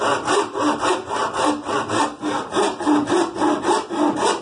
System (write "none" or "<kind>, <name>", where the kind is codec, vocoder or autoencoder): none